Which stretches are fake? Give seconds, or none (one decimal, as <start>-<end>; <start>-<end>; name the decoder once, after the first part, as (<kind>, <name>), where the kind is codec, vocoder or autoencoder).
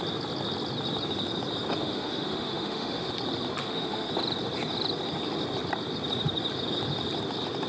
1.8-3.1 (autoencoder, DAC-VAE); 3.6-4.1